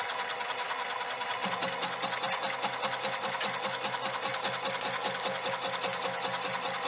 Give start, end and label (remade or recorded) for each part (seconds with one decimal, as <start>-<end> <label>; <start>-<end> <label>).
0.0-6.9 recorded